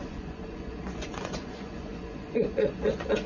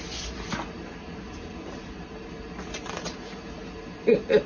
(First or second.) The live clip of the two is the second